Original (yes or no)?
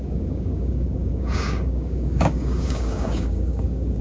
no